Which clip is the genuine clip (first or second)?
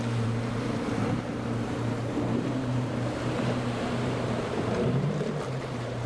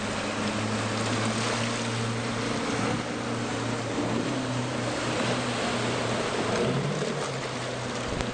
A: second